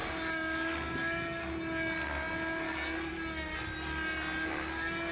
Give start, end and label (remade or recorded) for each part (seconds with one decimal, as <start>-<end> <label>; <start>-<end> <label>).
0.0-5.1 recorded